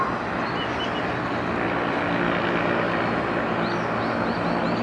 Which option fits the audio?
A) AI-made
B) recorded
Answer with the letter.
B